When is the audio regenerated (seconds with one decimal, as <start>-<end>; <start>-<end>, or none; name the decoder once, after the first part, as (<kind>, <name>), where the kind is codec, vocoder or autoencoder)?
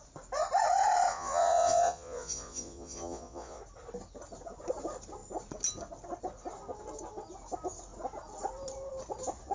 1.1-3.6 (vocoder, Vocos)